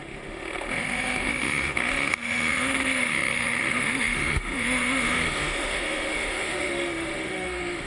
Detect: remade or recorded remade